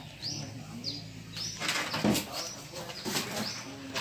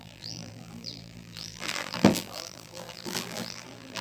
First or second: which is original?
first